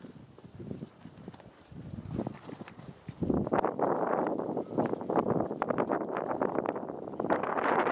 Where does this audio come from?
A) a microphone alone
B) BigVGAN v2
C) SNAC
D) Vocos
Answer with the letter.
A